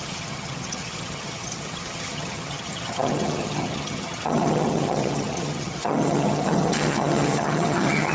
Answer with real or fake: fake